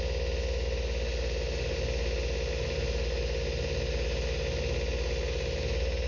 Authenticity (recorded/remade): recorded